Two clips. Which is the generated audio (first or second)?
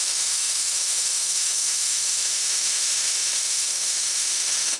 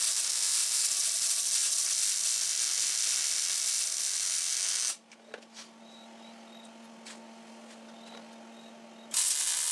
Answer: first